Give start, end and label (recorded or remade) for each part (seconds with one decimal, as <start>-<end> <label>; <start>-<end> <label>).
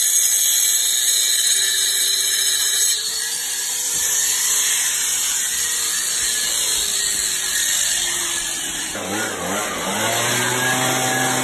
0.0-1.6 recorded; 1.6-3.2 remade; 3.2-11.4 recorded